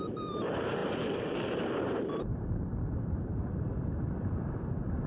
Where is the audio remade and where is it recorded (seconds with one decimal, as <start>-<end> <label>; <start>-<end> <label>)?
0.0-2.3 remade; 2.3-4.2 recorded; 4.2-5.1 remade